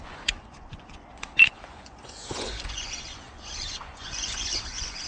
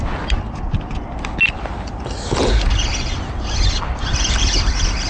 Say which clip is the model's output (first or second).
first